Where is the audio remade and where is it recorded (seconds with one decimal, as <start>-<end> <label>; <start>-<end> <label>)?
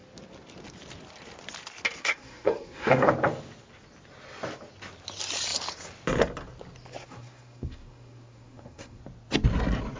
0.0-2.0 recorded; 2.0-3.1 remade; 3.1-7.0 recorded; 7.0-9.0 remade; 9.0-10.0 recorded